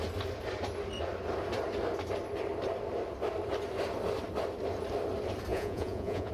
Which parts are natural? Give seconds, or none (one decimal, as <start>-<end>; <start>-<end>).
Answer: 0.0-5.5